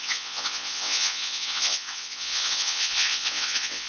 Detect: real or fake fake